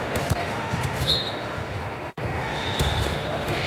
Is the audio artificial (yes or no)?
yes